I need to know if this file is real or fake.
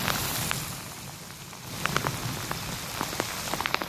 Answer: real